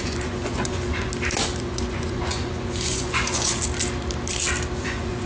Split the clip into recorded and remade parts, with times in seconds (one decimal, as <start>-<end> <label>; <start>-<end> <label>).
0.0-1.1 remade; 1.1-1.6 recorded; 1.6-3.6 remade; 3.6-4.8 recorded; 4.8-5.3 remade